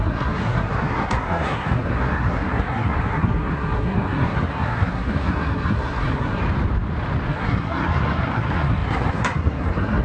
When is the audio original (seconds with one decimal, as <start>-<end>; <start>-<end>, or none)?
6.4-7.3